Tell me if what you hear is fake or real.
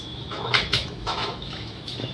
fake